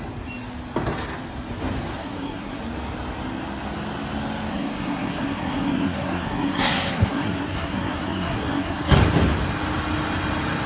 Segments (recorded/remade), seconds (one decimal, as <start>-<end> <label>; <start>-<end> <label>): 0.0-2.0 recorded; 2.0-2.6 remade; 2.6-4.5 recorded; 4.5-9.0 remade; 9.0-10.7 recorded